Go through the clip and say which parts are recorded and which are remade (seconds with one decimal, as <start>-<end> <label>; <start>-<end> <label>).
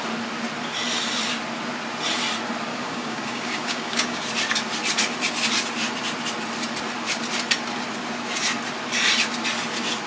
0.0-2.7 recorded; 2.7-4.2 remade; 4.2-10.1 recorded